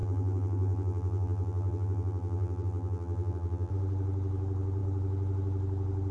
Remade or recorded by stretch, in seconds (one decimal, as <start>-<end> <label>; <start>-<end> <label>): 0.0-3.7 remade; 3.7-6.1 recorded